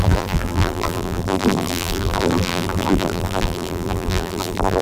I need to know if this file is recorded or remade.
remade